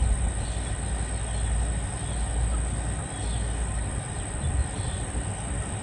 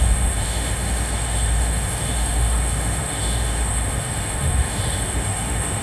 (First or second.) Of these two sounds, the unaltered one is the first